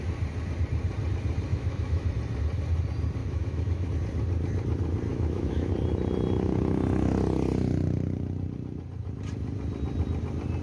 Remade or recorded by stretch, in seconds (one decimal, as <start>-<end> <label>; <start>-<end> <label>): 0.0-1.5 recorded; 1.5-2.1 remade; 2.1-3.2 recorded; 3.2-3.9 remade; 3.9-5.1 recorded; 5.1-5.7 remade; 5.7-10.6 recorded